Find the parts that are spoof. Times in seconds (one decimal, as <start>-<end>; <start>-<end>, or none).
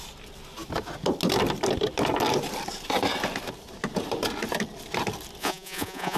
5.4-6.2